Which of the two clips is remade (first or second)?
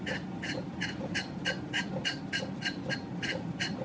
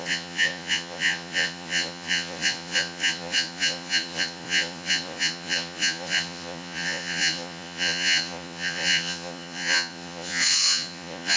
second